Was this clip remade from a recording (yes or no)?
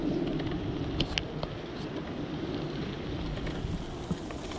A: no